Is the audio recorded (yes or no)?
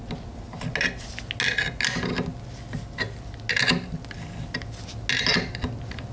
yes